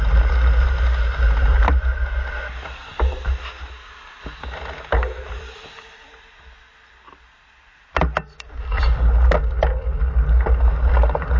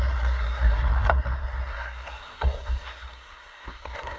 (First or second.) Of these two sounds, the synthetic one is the second